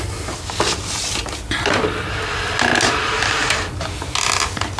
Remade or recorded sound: recorded